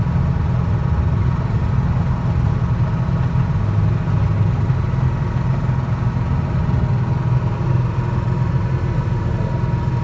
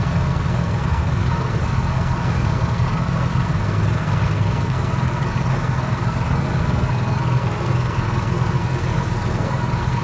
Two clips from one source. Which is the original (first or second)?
first